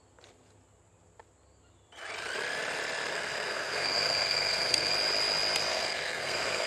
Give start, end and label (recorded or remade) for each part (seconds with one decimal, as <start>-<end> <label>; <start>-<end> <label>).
0.0-3.1 recorded; 3.1-4.9 remade; 4.9-5.7 recorded; 5.7-6.7 remade